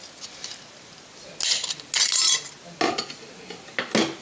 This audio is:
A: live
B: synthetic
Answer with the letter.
A